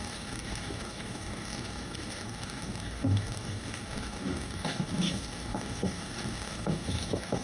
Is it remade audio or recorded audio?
remade